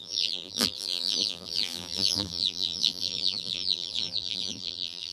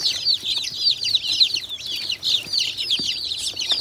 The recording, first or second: second